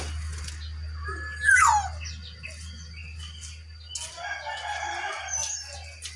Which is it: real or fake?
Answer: real